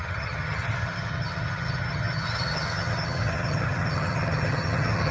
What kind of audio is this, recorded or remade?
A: remade